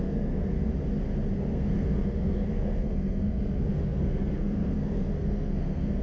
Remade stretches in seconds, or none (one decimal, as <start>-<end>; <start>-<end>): 0.0-0.7; 1.4-6.0